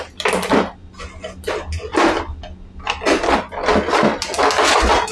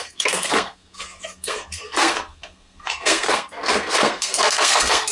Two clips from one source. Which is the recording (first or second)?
first